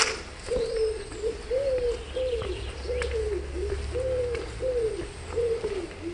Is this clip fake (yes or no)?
no